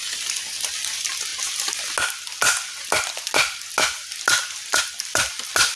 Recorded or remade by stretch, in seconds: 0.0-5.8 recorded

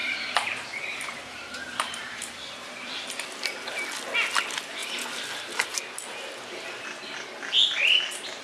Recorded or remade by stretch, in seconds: 0.0-2.3 remade; 2.3-4.8 recorded; 4.8-5.8 remade; 5.8-8.4 recorded

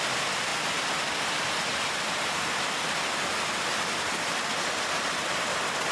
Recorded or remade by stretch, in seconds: 0.0-5.9 recorded

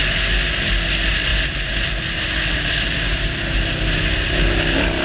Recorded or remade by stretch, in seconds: 0.0-5.0 recorded